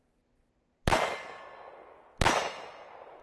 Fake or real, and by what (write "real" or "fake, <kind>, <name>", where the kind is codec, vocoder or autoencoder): real